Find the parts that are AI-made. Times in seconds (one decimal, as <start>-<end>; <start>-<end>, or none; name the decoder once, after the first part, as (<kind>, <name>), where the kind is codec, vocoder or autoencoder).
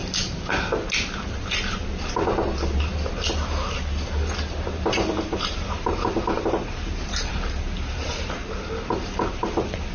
4.8-8.4 (vocoder, BigVGAN v2); 9.3-9.9